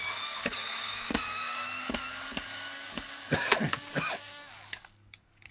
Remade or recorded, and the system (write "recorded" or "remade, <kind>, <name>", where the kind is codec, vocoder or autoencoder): remade, codec, DAC